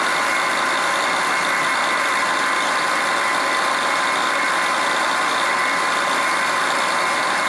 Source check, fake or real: real